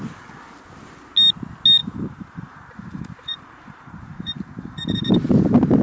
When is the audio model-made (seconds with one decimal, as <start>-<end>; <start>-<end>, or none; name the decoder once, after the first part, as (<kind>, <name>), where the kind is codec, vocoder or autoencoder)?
1.8-5.2 (vocoder, BigVGAN v2)